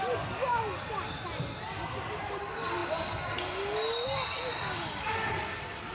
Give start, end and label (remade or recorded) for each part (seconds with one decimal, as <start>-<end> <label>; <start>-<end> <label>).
0.0-5.9 recorded